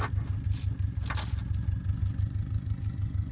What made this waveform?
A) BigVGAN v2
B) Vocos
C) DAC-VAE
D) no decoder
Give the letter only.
D